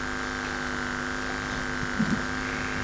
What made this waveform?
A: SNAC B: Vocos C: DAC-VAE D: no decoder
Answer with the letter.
D